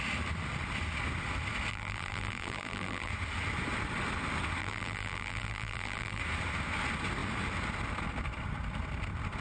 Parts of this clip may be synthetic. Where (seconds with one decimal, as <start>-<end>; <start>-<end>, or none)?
1.7-3.1; 4.6-6.2